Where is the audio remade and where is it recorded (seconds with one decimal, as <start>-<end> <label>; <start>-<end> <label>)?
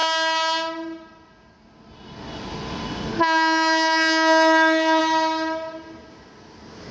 0.0-3.1 recorded; 3.1-5.0 remade; 5.0-6.9 recorded